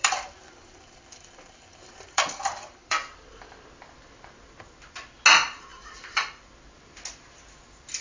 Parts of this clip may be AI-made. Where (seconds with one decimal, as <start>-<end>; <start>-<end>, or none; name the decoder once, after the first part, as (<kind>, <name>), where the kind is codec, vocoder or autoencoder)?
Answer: 0.0-3.6 (vocoder, BigVGAN v2); 5.7-6.4